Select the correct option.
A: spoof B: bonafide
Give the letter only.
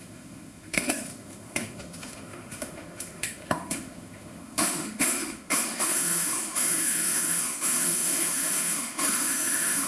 A